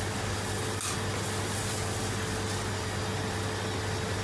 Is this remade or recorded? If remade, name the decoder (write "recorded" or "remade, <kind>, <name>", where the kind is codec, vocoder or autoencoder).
recorded